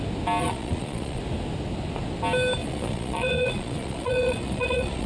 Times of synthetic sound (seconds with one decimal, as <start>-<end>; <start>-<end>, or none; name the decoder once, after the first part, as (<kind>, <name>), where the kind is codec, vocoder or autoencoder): 0.4-1.2 (vocoder, Vocos); 2.6-5.1